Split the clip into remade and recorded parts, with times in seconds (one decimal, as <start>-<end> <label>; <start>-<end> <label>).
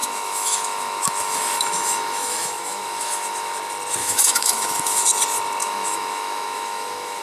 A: 0.0-3.5 remade; 3.5-4.0 recorded; 4.0-5.0 remade; 5.0-5.6 recorded; 5.6-7.2 remade